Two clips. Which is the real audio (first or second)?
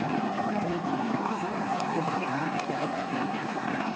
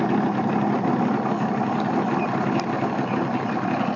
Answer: second